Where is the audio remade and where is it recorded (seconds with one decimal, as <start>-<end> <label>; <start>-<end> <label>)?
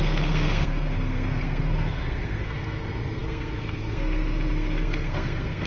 0.0-5.7 remade